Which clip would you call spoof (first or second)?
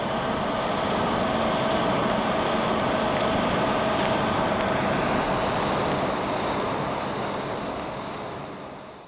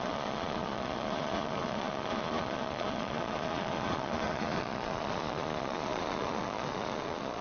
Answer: second